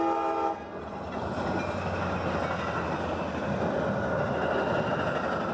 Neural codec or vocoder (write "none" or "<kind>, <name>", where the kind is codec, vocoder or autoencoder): none